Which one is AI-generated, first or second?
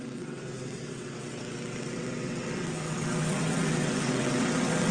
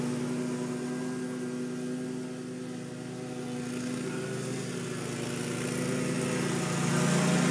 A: first